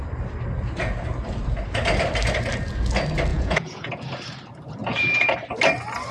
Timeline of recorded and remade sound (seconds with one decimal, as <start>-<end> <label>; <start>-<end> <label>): 0.0-3.3 recorded; 3.3-3.9 remade; 3.9-4.8 recorded; 4.8-5.3 remade; 5.3-6.1 recorded